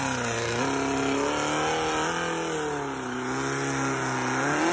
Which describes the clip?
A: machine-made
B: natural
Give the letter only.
B